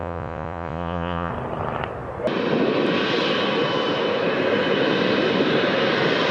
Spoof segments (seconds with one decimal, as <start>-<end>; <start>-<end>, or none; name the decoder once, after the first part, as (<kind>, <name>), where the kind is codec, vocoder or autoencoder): 0.0-1.3 (vocoder, Vocos)